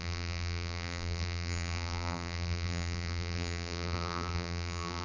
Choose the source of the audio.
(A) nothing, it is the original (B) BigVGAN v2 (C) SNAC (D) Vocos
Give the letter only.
B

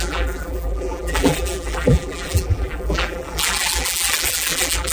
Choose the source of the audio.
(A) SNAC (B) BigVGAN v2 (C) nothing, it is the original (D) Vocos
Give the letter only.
B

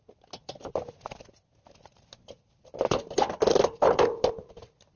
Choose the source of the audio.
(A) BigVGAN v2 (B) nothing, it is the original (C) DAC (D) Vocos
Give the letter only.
B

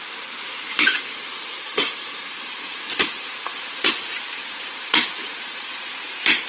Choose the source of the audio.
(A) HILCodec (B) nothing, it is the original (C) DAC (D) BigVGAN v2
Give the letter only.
D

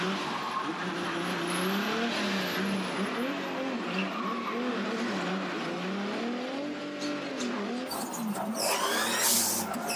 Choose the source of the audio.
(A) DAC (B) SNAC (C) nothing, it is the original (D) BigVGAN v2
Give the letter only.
C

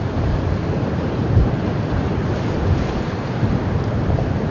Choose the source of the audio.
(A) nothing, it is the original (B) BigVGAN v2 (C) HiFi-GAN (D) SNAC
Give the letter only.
B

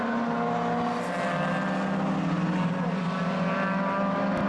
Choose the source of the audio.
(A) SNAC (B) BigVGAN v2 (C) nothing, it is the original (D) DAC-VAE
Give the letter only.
C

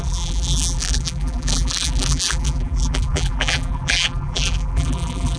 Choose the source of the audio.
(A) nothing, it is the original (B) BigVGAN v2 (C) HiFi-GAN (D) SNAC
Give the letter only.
B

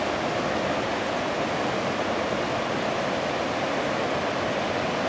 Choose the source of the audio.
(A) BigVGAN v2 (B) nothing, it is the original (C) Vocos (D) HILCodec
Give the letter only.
B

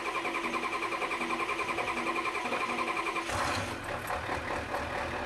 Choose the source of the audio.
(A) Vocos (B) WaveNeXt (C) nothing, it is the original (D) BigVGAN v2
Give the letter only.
C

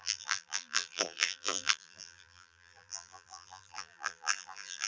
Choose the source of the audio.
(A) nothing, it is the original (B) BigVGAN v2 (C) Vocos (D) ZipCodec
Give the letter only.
B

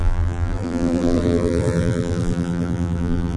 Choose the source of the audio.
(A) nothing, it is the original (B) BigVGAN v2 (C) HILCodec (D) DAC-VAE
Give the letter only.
B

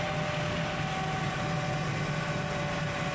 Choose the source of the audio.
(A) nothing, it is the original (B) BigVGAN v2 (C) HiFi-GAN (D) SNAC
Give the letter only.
A